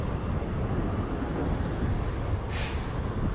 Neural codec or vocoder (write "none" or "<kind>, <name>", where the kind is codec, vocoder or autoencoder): none